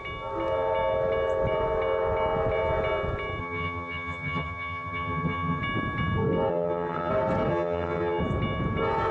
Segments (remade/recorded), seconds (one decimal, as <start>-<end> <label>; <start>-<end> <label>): 0.0-3.4 recorded; 3.4-5.6 remade; 5.6-6.5 recorded; 6.5-7.1 remade; 7.1-7.5 recorded; 7.5-8.2 remade; 8.2-9.1 recorded